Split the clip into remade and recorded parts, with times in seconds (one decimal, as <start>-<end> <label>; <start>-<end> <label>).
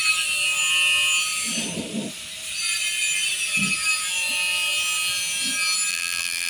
0.0-5.9 recorded; 5.9-6.5 remade